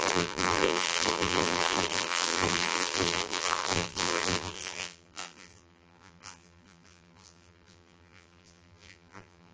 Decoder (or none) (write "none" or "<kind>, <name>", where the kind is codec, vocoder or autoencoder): vocoder, BigVGAN v2